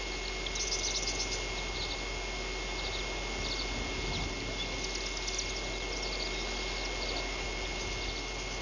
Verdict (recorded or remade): recorded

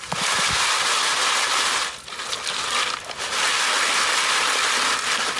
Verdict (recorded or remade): recorded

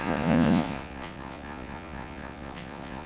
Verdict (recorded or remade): remade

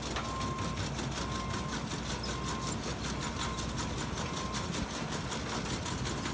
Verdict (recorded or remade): recorded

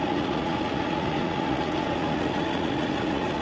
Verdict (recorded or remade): remade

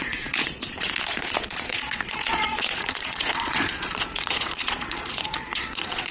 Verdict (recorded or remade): remade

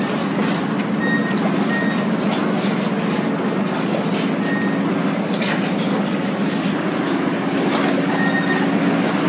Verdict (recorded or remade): recorded